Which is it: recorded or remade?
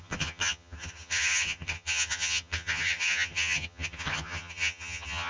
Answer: remade